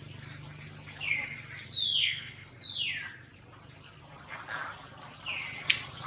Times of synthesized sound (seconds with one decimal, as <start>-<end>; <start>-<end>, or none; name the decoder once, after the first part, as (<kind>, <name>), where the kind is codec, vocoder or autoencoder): 2.0-2.5 (codec, SNAC)